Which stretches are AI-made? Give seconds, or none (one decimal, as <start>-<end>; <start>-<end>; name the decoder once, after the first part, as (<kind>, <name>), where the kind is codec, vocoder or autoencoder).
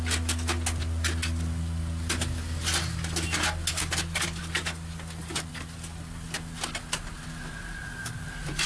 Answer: none